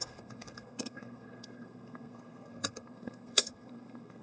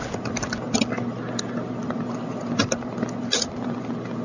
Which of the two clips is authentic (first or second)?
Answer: second